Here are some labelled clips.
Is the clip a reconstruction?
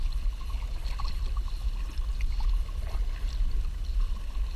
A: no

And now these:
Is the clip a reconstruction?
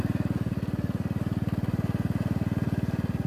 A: no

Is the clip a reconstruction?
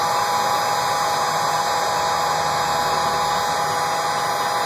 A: no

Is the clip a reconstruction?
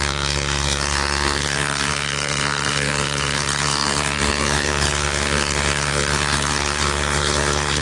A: yes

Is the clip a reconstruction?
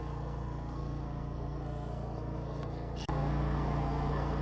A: yes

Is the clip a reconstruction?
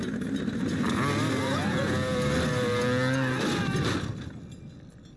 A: no